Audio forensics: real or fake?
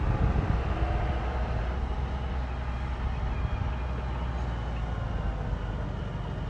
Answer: real